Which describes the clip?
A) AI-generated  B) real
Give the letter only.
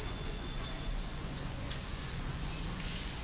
A